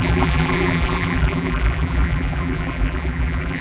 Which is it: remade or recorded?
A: remade